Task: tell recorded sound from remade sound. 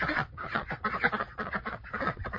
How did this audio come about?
remade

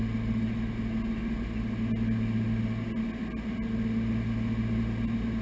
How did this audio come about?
recorded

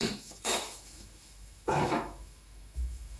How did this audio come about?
remade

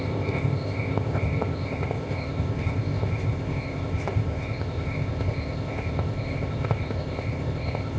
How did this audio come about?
remade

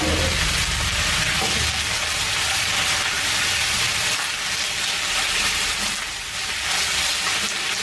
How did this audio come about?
recorded